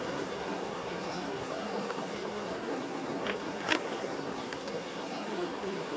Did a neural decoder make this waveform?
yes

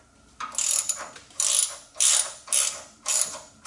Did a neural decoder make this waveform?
no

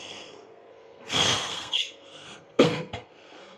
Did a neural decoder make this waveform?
yes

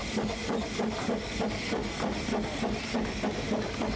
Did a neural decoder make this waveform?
no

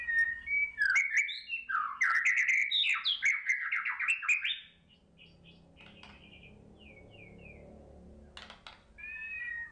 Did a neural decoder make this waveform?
no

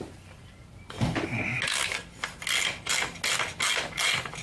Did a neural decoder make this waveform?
no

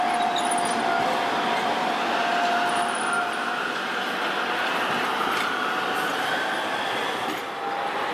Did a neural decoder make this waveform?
no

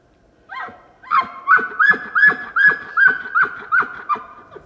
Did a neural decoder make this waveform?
no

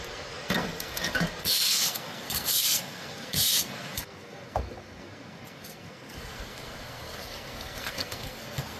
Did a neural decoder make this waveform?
yes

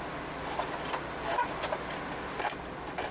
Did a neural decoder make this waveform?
no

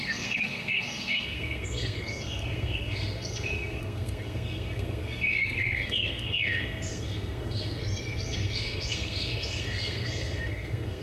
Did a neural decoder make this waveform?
yes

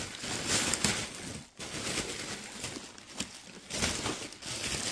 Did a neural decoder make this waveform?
no